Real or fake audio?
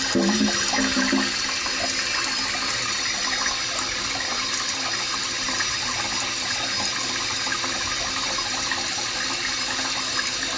real